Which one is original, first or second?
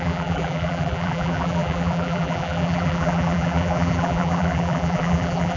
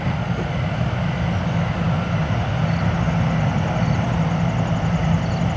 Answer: second